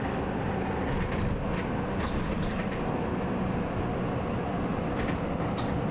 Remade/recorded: recorded